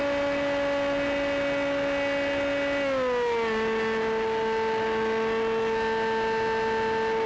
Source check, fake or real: real